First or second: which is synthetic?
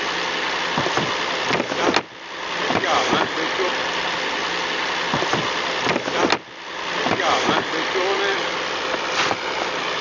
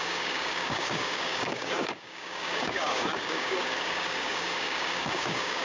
second